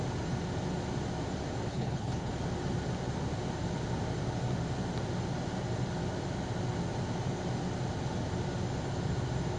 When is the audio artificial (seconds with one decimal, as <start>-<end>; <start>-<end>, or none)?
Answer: 1.7-2.3